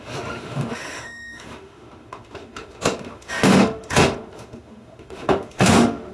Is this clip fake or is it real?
fake